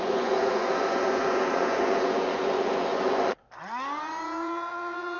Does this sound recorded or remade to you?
remade